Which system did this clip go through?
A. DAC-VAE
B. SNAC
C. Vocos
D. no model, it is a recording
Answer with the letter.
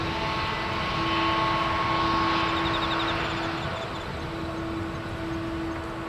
D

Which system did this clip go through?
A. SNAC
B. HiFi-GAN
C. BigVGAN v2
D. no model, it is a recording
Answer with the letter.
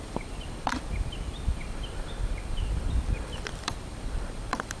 C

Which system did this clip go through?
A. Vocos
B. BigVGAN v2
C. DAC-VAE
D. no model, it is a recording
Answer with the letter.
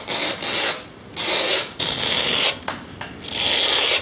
D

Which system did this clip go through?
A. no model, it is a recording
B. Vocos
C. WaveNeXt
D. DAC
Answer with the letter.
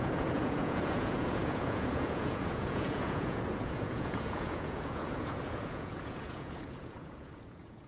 B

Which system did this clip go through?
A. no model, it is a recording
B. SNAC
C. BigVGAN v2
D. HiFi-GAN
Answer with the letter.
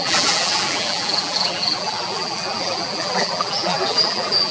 C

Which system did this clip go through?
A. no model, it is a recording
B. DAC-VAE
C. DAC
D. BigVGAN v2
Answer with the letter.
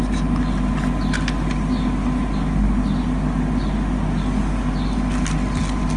A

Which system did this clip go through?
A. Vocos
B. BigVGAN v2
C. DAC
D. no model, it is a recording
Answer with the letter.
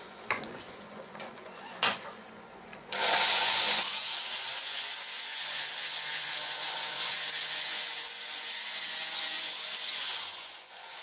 A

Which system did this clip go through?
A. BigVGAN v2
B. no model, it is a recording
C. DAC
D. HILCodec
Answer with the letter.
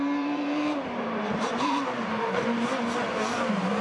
A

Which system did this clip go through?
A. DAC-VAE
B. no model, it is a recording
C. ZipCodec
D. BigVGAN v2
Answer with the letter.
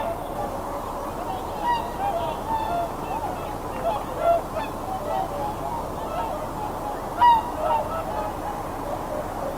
B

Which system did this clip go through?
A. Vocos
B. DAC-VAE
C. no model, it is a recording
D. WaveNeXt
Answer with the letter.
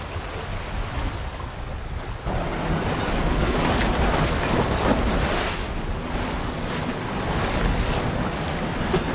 C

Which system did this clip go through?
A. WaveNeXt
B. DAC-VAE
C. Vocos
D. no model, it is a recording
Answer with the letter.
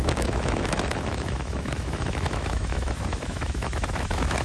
B